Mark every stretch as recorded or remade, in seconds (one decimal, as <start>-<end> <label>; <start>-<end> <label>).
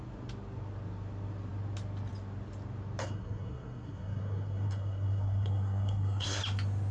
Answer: 0.0-3.0 recorded; 3.0-6.4 remade; 6.4-6.9 recorded